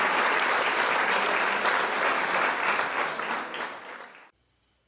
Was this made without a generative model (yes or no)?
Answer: yes